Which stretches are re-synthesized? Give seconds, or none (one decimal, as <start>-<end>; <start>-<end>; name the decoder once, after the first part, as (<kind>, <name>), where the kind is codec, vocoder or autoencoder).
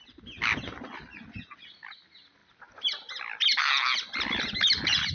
none